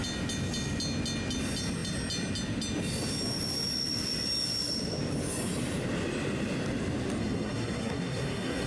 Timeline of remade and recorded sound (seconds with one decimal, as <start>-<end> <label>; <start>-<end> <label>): 0.0-7.2 recorded; 7.2-8.7 remade